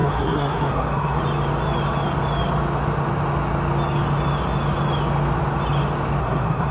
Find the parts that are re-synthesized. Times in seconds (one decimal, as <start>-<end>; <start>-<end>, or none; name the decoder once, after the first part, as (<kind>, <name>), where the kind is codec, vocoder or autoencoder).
0.0-1.2 (codec, SNAC); 6.2-6.7